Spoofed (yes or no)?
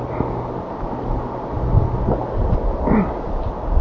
no